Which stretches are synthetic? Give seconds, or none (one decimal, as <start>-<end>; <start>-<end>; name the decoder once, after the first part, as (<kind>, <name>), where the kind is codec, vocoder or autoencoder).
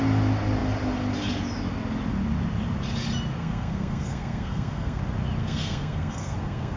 3.4-5.0 (codec, SNAC); 5.4-6.8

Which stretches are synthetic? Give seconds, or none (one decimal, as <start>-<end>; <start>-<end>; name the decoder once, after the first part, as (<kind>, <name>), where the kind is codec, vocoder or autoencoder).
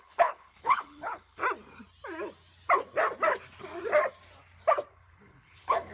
0.0-1.4 (codec, HILCodec); 4.9-5.9